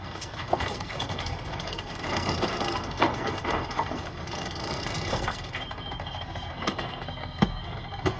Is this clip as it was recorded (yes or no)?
no